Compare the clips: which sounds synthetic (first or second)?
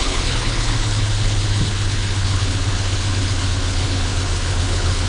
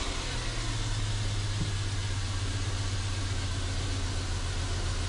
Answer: first